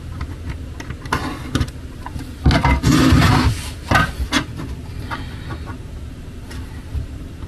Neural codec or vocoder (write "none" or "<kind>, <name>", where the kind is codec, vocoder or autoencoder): none